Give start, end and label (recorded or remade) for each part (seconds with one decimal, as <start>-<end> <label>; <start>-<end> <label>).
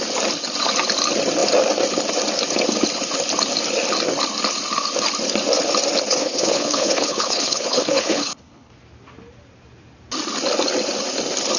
0.0-6.2 recorded; 6.2-8.7 remade; 8.7-11.6 recorded